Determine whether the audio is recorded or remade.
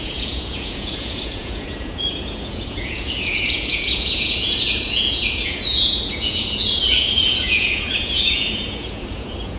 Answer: remade